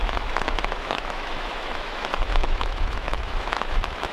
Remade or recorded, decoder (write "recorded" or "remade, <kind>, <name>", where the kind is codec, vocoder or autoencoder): remade, autoencoder, DAC-VAE